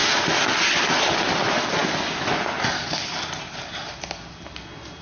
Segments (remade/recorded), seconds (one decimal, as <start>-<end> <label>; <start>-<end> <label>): 0.0-5.0 recorded